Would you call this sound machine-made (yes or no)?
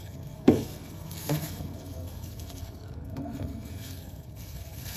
yes